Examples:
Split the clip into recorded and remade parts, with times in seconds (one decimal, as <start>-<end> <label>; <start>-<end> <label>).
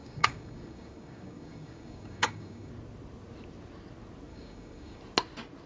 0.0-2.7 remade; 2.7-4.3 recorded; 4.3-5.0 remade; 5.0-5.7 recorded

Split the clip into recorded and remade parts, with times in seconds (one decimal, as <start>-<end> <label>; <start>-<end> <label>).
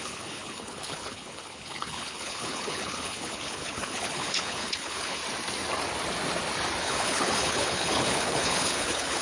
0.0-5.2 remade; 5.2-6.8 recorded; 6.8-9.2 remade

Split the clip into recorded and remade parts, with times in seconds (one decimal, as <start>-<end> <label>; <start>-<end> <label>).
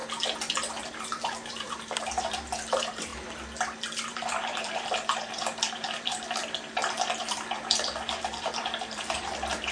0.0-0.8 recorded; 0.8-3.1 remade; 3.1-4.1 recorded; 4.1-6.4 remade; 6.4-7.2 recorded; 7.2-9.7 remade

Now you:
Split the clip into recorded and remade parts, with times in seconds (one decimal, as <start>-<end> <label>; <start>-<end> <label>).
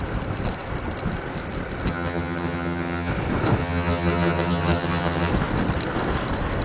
0.0-1.9 recorded; 1.9-3.1 remade; 3.1-3.6 recorded; 3.6-5.3 remade; 5.3-6.6 recorded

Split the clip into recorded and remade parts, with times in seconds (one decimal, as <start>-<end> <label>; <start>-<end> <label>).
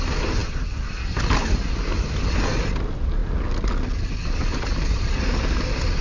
0.0-6.0 recorded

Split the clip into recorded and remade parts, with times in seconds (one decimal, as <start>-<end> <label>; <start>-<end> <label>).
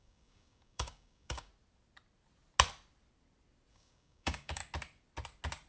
0.0-1.5 remade; 1.5-3.7 recorded; 3.7-4.6 remade; 4.6-5.7 recorded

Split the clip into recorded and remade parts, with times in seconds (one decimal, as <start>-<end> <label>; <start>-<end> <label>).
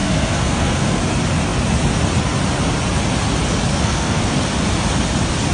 0.0-1.0 remade; 1.0-3.7 recorded; 3.7-4.4 remade; 4.4-5.5 recorded